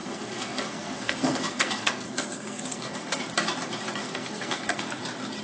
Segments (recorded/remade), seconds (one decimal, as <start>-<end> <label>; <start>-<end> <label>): 0.0-3.2 remade; 3.2-4.0 recorded; 4.0-5.0 remade; 5.0-5.4 recorded